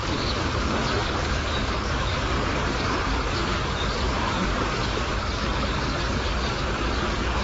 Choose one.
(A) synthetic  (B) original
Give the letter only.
A